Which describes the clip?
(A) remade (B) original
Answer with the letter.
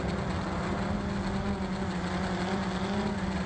B